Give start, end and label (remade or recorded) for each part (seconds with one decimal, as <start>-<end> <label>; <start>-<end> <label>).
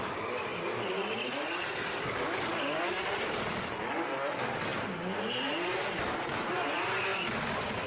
0.0-7.9 recorded